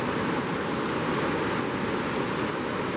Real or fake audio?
real